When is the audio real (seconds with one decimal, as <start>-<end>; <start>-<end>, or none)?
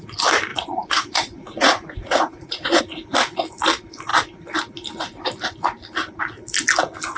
0.0-0.5; 2.8-7.2